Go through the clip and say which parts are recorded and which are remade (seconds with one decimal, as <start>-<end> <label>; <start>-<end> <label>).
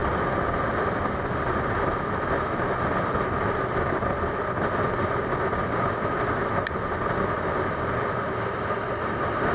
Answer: 0.0-9.5 recorded